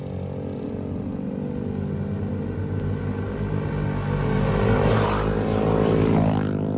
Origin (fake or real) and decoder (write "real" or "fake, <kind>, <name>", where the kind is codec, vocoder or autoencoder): real